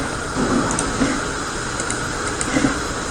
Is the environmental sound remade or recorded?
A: recorded